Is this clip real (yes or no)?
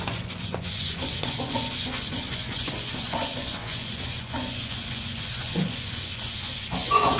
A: no